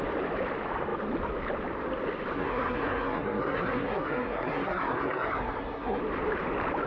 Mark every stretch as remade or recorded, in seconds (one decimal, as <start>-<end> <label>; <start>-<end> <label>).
0.0-2.3 recorded; 2.3-6.0 remade; 6.0-6.9 recorded